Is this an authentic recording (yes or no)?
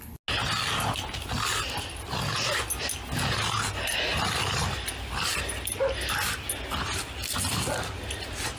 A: yes